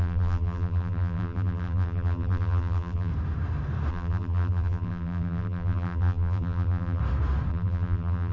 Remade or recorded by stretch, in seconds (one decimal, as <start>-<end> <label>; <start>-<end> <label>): 0.0-3.1 remade; 3.1-3.9 recorded; 3.9-7.0 remade; 7.0-7.5 recorded; 7.5-8.3 remade